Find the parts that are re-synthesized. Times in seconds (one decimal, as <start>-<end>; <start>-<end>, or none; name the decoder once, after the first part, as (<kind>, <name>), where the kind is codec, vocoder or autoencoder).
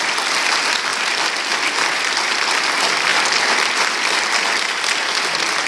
none